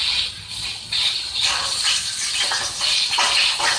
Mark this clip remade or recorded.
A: recorded